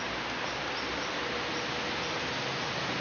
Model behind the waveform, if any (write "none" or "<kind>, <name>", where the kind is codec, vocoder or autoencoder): none